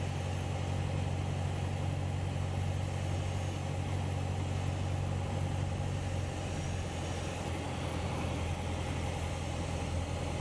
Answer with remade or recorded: recorded